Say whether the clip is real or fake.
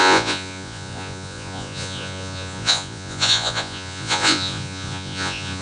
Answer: fake